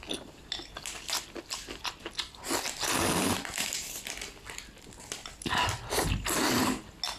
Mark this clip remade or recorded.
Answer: recorded